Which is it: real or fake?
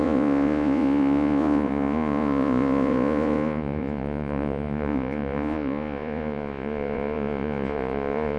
fake